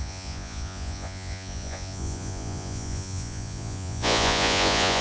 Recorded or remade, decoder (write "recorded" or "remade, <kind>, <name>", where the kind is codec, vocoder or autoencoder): remade, vocoder, Vocos